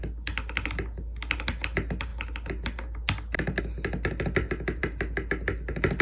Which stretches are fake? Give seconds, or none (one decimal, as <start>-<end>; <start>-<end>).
none